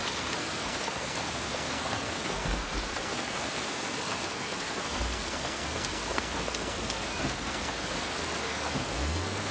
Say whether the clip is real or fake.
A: fake